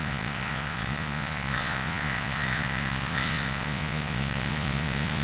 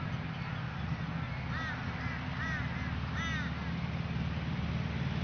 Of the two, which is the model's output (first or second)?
first